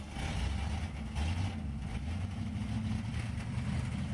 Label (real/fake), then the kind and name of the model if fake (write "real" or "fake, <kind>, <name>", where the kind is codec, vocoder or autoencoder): real